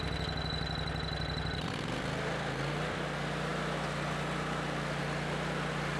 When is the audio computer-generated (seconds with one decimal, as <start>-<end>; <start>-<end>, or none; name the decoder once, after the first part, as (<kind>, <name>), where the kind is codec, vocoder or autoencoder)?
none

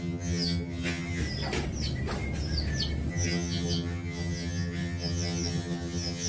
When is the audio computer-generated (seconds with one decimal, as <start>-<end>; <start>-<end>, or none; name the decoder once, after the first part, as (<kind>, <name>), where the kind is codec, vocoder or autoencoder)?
0.0-1.2 (vocoder, HiFi-GAN); 3.1-6.3

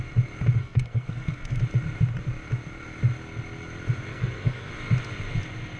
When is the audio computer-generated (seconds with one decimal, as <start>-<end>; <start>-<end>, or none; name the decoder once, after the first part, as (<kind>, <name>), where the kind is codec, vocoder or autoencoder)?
0.6-1.6 (codec, SNAC); 4.1-4.7

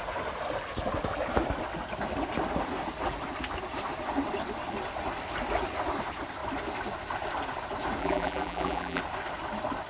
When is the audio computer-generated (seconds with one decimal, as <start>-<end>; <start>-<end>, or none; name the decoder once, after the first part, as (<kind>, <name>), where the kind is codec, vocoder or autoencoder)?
8.0-9.0 (vocoder, BigVGAN v2)

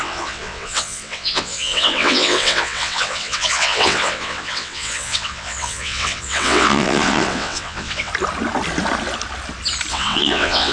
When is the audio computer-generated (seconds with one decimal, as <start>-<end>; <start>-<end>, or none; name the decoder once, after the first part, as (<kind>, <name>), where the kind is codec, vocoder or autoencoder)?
0.0-8.1 (vocoder, WaveNeXt); 9.9-10.7

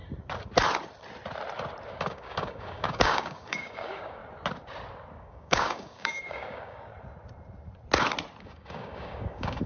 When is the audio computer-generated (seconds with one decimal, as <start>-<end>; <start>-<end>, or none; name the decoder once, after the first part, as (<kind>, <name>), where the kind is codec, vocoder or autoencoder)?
1.9-4.2 (codec, DAC); 5.2-6.9; 8.4-9.7